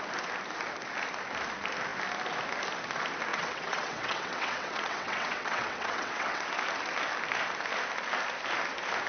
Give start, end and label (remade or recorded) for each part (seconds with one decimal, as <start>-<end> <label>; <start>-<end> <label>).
0.0-3.3 recorded; 3.3-6.5 remade; 6.5-9.1 recorded